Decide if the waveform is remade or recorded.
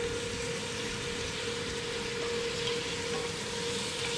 recorded